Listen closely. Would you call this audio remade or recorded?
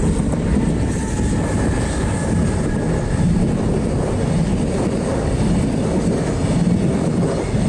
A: recorded